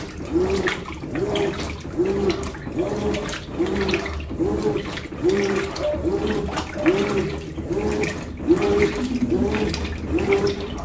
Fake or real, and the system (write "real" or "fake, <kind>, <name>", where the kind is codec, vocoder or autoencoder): real